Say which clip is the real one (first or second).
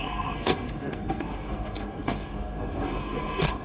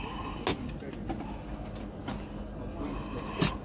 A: second